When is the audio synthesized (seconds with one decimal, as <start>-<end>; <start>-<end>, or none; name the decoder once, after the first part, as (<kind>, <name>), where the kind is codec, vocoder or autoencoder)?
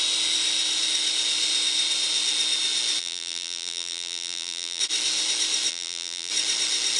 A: 3.0-4.8 (vocoder, BigVGAN v2); 5.7-6.3